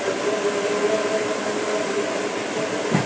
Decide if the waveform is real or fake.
real